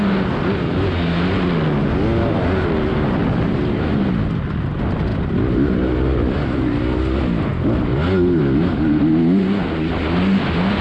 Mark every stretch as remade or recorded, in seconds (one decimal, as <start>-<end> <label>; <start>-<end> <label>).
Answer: 0.0-3.2 recorded; 3.2-4.1 remade; 4.1-5.1 recorded; 5.1-6.8 remade; 6.8-10.8 recorded